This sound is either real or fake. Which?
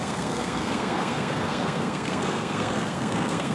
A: fake